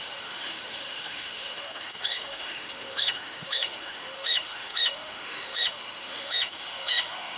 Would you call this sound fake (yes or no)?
yes